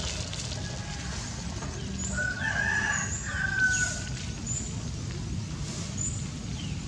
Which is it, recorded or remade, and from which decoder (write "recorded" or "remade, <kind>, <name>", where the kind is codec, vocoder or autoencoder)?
recorded